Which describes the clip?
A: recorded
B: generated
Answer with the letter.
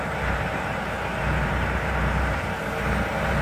B